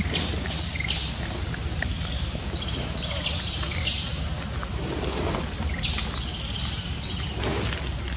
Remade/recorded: recorded